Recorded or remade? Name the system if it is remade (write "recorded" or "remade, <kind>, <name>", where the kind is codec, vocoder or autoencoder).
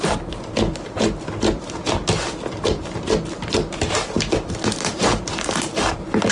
remade, vocoder, BigVGAN v2